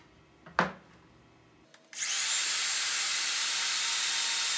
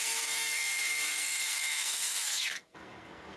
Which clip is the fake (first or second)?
second